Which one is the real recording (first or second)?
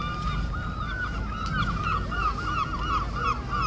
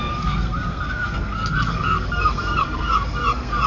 first